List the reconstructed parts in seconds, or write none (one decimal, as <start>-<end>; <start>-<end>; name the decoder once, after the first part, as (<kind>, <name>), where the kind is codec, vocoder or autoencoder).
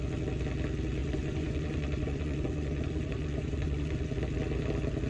1.0-4.1 (vocoder, Vocos)